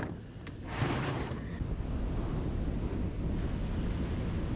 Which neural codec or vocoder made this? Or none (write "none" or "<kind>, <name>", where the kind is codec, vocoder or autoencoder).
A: none